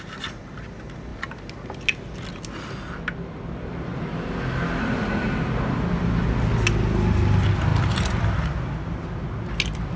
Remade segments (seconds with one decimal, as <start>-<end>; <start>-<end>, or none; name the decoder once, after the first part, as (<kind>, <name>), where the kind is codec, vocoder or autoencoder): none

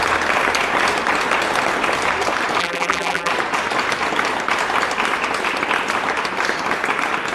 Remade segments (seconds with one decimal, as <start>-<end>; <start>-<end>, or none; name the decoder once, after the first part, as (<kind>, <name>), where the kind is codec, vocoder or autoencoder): 2.6-3.3 (vocoder, BigVGAN v2)

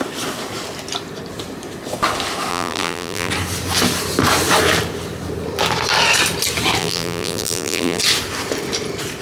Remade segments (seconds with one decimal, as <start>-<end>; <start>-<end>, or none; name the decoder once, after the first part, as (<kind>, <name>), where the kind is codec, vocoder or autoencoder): 2.5-3.3 (vocoder, BigVGAN v2); 6.8-8.0

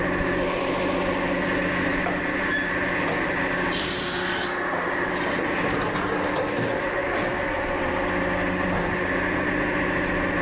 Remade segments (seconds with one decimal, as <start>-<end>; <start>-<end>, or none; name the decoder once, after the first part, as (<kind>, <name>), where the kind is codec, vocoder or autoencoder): 1.9-5.1 (vocoder, BigVGAN v2); 7.0-7.9

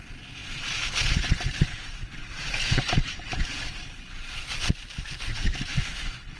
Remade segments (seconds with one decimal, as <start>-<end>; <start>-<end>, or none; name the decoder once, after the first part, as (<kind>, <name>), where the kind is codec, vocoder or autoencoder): 2.2-6.0 (vocoder, BigVGAN v2)

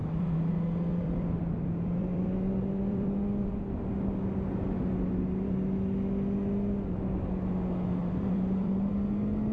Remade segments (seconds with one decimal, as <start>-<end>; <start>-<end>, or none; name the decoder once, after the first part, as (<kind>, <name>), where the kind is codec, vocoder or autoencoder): 0.0-0.5 (vocoder, BigVGAN v2); 0.9-3.6; 8.0-8.9

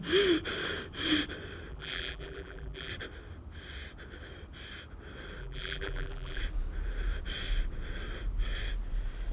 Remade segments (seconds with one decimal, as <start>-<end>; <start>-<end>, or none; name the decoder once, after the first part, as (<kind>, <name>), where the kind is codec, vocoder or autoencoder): 1.7-2.9 (vocoder, BigVGAN v2); 5.4-6.4

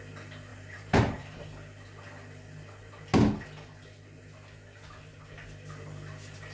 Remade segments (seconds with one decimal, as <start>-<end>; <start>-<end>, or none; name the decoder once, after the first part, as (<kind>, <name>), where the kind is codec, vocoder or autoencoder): 0.5-1.4 (vocoder, BigVGAN v2)